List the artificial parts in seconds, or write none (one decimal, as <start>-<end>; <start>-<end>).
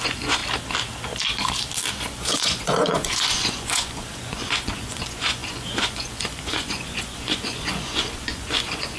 0.0-0.4; 1.9-9.0